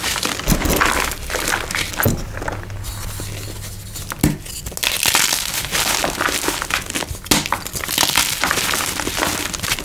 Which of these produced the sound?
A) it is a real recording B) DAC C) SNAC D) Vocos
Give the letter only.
A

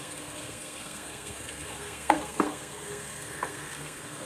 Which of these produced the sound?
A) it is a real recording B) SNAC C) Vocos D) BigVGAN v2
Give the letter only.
B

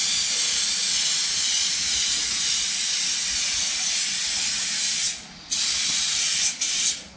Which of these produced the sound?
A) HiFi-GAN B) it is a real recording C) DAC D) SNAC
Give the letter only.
B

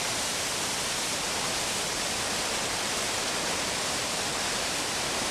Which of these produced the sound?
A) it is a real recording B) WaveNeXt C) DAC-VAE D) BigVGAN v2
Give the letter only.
A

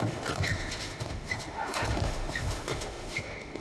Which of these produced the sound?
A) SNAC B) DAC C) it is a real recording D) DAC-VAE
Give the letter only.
D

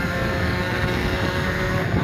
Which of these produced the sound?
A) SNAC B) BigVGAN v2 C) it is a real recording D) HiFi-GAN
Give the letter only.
A